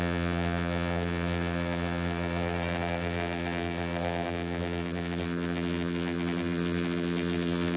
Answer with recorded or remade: remade